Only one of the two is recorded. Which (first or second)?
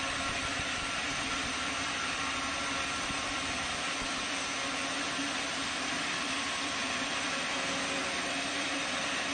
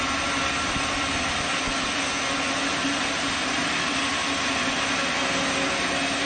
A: second